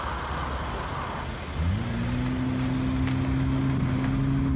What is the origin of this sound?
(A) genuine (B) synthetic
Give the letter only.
A